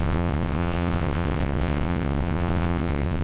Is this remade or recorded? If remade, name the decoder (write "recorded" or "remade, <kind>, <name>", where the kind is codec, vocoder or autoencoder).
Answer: remade, vocoder, WaveNeXt